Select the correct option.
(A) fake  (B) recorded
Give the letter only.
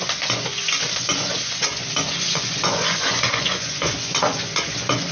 A